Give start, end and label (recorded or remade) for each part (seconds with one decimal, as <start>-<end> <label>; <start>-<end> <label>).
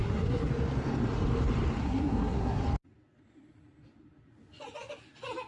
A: 0.0-0.5 remade; 0.5-1.8 recorded; 1.8-2.6 remade; 2.6-5.5 recorded